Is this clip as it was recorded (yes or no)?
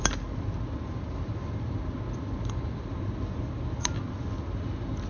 yes